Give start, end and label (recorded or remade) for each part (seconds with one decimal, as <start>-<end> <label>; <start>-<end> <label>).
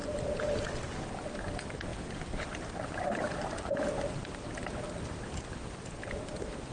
0.0-6.7 recorded